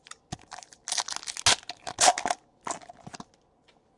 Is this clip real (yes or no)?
yes